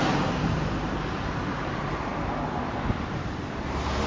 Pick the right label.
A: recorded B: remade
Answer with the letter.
B